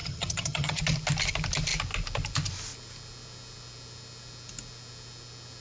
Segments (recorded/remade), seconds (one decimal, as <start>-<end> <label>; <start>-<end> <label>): 0.0-0.8 remade; 0.8-5.6 recorded